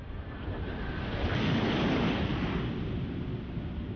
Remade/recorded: recorded